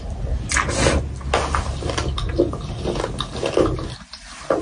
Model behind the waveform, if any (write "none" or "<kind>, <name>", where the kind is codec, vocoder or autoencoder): none